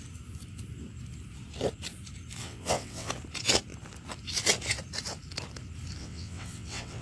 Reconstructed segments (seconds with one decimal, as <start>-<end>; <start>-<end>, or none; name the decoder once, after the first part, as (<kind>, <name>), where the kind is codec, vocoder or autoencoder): 2.4-3.1 (vocoder, WaveNeXt); 6.0-7.0